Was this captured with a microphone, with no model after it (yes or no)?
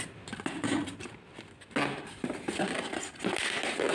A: yes